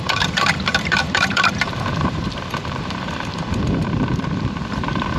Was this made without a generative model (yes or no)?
no